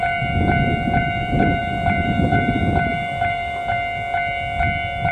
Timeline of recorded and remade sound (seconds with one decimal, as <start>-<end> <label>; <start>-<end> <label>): 0.0-3.6 remade; 3.6-5.1 recorded